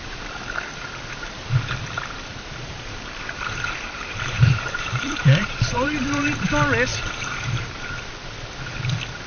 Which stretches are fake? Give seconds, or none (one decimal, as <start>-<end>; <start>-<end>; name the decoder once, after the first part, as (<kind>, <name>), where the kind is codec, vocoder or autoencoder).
2.3-6.5 (vocoder, BigVGAN v2); 6.9-8.1